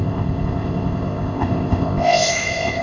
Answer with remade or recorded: remade